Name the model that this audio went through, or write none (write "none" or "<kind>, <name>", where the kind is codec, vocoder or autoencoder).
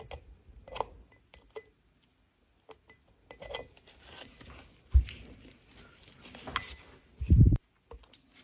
none